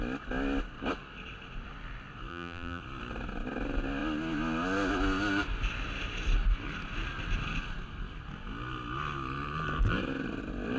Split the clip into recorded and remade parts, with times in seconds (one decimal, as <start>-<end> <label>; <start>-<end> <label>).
0.0-2.3 recorded; 2.3-2.8 remade; 2.8-10.8 recorded

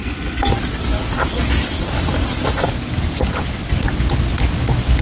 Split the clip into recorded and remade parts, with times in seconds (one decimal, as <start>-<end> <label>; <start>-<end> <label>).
0.0-0.5 remade; 0.5-5.0 recorded

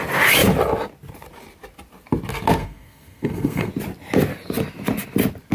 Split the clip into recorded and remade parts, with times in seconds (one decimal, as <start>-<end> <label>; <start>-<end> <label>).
0.0-2.6 recorded; 2.6-3.7 remade; 3.7-5.5 recorded

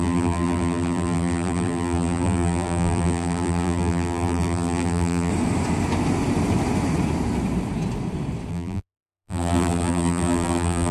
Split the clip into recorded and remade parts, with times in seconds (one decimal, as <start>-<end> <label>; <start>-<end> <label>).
0.0-5.3 remade; 5.3-8.5 recorded; 8.5-10.9 remade

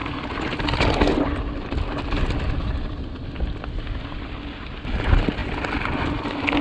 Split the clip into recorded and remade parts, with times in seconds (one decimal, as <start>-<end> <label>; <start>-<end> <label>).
0.0-6.6 recorded

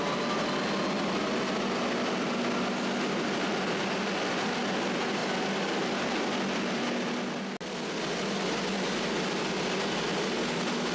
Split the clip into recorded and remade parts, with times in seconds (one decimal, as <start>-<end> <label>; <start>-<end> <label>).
0.0-10.9 recorded